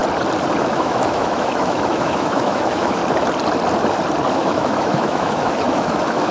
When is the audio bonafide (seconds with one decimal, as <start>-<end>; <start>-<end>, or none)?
0.0-0.6; 3.0-4.3